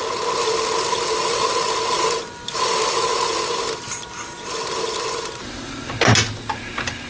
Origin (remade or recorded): recorded